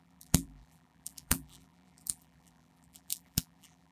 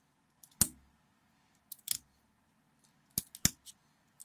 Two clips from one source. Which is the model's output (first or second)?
first